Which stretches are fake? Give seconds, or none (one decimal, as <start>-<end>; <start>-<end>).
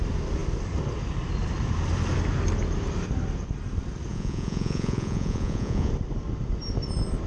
4.1-5.9